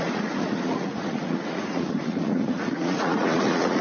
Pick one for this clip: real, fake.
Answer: fake